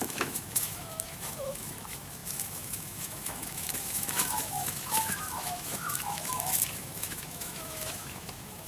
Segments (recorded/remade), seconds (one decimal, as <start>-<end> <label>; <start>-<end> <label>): 0.0-8.7 remade